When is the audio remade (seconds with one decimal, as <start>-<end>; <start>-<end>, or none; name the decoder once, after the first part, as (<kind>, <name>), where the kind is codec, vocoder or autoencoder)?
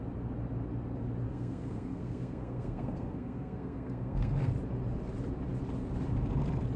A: 1.3-4.5 (codec, SNAC)